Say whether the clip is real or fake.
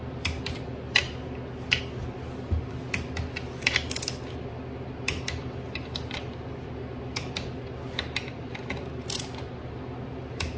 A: real